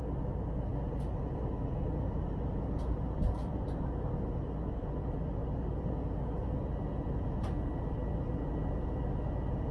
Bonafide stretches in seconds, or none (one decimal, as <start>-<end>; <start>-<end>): 0.0-9.7